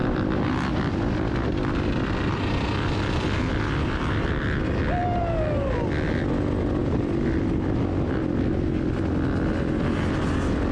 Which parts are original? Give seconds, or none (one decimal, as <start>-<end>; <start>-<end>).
0.0-10.7